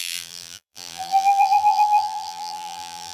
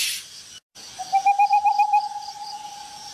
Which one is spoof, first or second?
first